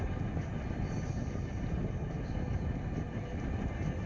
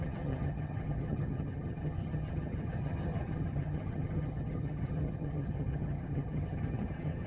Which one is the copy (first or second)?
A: second